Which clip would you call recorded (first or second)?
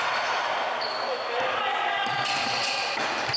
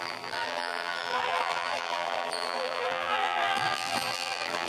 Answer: first